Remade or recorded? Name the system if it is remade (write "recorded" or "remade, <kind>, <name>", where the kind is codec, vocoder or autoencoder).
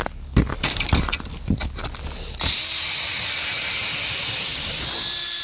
recorded